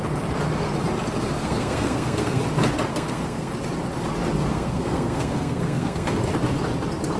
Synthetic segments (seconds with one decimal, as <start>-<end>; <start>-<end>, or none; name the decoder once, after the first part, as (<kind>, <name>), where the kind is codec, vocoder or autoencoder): 1.4-2.4 (codec, SNAC); 2.9-3.5; 4.5-6.2